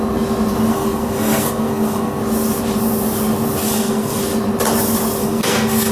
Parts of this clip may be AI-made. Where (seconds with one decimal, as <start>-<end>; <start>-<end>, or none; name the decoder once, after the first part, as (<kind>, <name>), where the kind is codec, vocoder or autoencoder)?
0.7-2.2 (codec, SNAC); 3.6-4.2; 5.2-5.9